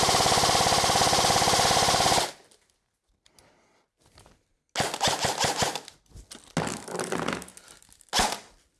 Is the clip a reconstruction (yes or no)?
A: no